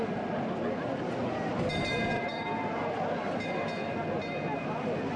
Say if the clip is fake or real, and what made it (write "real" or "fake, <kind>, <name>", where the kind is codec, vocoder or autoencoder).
real